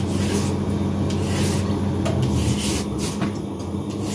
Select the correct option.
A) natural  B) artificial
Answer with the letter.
A